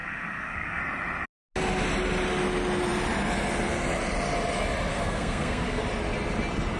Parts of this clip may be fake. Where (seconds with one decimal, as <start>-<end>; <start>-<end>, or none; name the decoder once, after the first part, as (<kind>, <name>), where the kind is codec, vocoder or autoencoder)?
0.0-0.8 (codec, SNAC); 4.9-5.8